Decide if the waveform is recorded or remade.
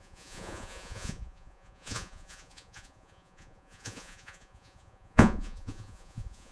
remade